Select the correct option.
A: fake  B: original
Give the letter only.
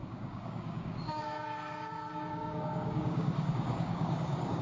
A